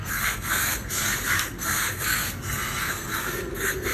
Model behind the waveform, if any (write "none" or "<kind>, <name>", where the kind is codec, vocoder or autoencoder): codec, SNAC